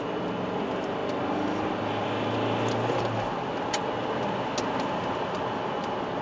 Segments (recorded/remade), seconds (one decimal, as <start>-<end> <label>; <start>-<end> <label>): 0.0-6.2 recorded